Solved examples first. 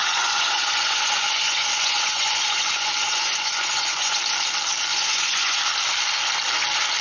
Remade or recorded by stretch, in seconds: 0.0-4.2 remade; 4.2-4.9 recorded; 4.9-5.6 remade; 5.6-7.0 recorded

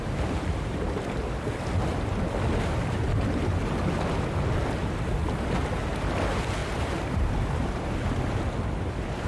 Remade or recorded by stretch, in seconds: 0.0-6.6 recorded; 6.6-8.0 remade; 8.0-9.3 recorded

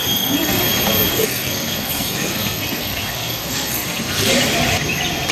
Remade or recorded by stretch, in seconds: 0.0-0.6 remade; 0.6-1.1 recorded; 1.1-4.3 remade; 4.3-5.3 recorded

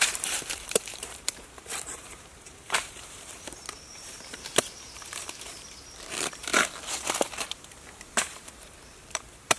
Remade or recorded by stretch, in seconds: 0.0-6.5 remade; 6.5-8.0 recorded; 8.0-9.6 remade

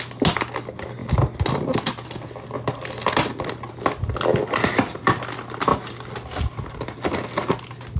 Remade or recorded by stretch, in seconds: 0.0-8.0 recorded

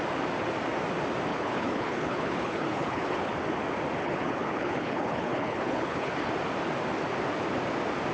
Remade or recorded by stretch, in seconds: 0.0-1.3 recorded; 1.3-3.3 remade; 3.3-4.0 recorded; 4.0-6.3 remade; 6.3-8.1 recorded

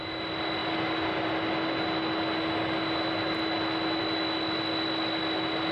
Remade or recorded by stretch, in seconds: 0.0-5.7 recorded